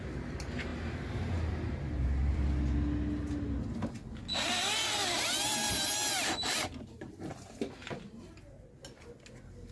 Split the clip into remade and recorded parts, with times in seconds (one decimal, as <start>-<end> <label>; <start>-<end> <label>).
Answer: 0.0-0.7 recorded; 0.7-2.5 remade; 2.5-5.6 recorded; 5.6-7.3 remade; 7.3-9.7 recorded